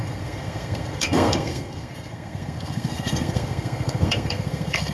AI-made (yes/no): yes